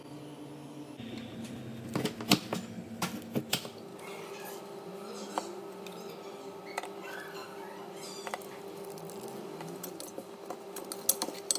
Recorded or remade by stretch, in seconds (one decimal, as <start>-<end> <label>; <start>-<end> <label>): 0.0-11.6 recorded